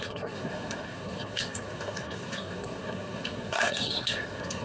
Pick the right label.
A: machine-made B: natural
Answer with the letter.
A